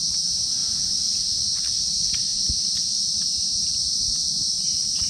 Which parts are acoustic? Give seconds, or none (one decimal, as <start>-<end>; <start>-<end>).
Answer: none